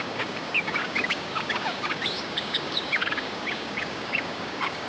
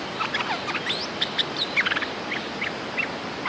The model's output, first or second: first